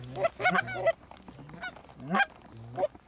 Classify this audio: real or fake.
real